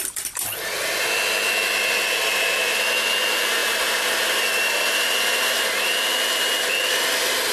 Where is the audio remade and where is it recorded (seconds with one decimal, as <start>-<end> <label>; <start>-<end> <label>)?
0.0-7.5 recorded